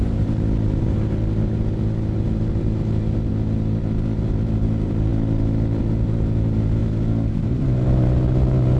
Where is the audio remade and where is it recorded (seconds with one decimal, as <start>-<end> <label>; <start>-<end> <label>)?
0.0-3.3 remade; 3.3-3.8 recorded; 3.8-5.1 remade; 5.1-5.8 recorded; 5.8-6.8 remade; 6.8-7.4 recorded; 7.4-8.8 remade